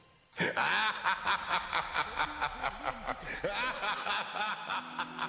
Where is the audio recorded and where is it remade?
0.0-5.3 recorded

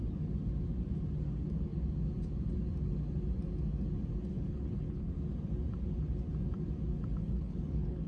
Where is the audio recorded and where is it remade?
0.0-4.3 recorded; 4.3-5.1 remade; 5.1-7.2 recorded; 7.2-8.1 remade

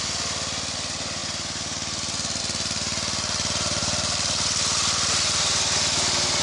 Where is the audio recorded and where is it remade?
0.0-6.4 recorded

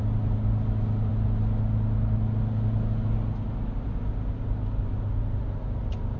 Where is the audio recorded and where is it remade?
0.0-6.2 recorded

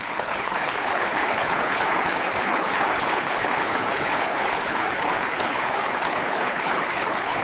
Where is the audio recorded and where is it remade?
0.0-7.4 remade

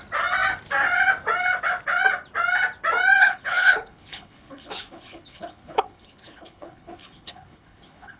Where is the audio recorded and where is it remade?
0.0-3.2 recorded; 3.2-8.2 remade